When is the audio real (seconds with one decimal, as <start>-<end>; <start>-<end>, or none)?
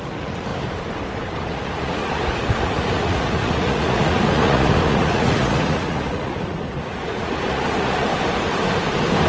0.5-1.5; 8.1-9.3